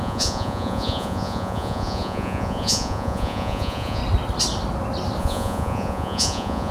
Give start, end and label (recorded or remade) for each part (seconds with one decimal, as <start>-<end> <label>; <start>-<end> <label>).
0.0-4.0 remade; 4.0-5.2 recorded; 5.2-6.7 remade